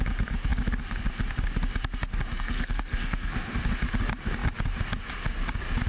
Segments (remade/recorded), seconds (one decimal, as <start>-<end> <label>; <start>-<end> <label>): 0.0-2.3 recorded; 2.3-3.3 remade; 3.3-5.9 recorded